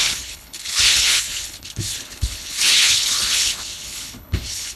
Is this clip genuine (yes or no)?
no